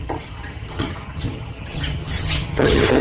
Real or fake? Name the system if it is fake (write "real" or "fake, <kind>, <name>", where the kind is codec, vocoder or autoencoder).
fake, vocoder, HiFi-GAN